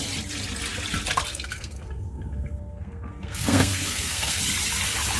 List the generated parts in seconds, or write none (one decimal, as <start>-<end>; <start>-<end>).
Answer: 1.3-4.4